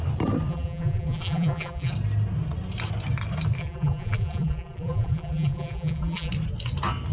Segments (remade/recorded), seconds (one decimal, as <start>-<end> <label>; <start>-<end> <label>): 0.0-0.5 recorded; 0.5-1.9 remade; 1.9-3.6 recorded; 3.6-6.3 remade; 6.3-7.1 recorded